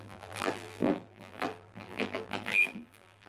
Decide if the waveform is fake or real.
fake